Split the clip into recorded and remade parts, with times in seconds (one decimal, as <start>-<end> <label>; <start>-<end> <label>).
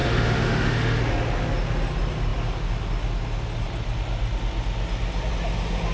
0.0-1.0 remade; 1.0-5.9 recorded